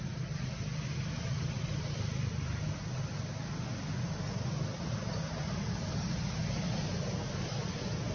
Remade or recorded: recorded